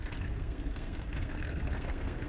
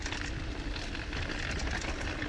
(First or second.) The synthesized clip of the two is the first